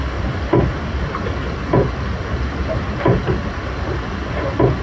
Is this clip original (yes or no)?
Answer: yes